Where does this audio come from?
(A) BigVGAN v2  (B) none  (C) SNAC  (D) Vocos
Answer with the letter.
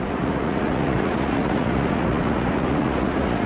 D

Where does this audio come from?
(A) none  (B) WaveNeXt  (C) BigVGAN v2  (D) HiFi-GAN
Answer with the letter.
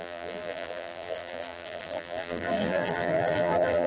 C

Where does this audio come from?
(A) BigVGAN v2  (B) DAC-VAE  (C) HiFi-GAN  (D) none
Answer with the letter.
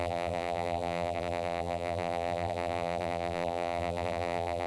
A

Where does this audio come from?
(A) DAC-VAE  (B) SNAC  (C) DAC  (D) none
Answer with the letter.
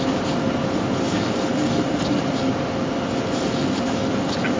D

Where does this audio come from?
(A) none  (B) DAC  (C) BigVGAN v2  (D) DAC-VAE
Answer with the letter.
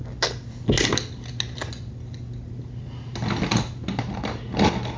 A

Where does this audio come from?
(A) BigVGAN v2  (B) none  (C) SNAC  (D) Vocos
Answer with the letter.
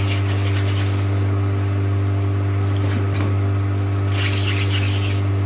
B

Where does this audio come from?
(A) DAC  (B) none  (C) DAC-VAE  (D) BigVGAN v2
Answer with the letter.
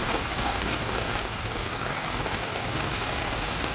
A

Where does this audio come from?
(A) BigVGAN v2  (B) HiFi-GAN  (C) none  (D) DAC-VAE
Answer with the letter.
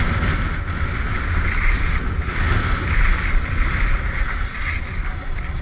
C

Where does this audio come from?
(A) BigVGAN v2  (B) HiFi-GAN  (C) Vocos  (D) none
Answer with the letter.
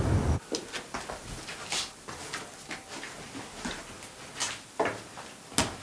D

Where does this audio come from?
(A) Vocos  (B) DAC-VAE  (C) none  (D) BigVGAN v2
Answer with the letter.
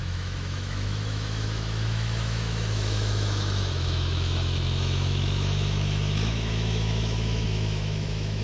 B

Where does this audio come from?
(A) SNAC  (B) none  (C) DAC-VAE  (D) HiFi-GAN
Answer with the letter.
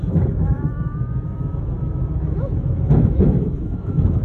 C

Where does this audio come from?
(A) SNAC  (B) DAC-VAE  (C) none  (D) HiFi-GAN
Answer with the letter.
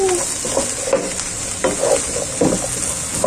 C